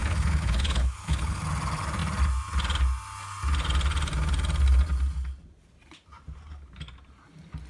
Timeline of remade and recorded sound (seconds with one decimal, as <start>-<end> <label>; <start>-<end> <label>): 0.0-1.4 remade; 1.4-7.7 recorded